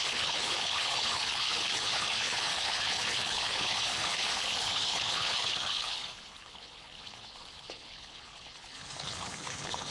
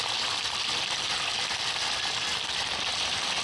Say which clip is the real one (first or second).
second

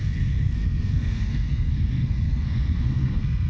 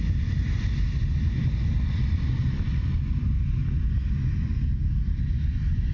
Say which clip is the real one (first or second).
second